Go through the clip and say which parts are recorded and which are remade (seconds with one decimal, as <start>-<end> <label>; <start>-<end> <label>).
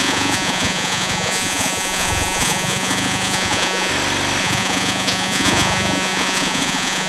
0.0-3.9 remade; 3.9-4.4 recorded; 4.4-7.1 remade